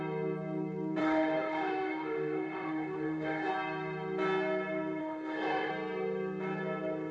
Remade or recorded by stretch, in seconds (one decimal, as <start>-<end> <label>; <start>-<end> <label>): 0.0-1.0 recorded; 1.0-3.5 remade; 3.5-5.0 recorded; 5.0-5.7 remade; 5.7-7.1 recorded